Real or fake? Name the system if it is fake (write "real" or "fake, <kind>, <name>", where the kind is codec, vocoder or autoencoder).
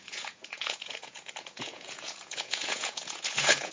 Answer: fake, vocoder, Vocos